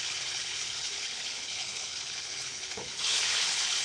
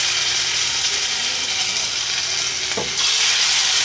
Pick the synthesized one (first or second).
first